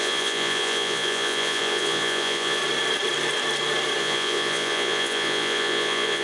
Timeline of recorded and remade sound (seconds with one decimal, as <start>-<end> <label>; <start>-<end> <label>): 0.0-2.6 remade; 2.6-4.0 recorded; 4.0-6.2 remade